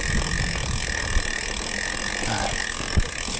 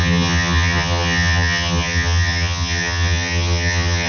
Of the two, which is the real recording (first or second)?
first